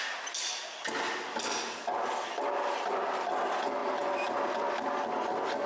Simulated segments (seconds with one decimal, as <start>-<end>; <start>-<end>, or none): none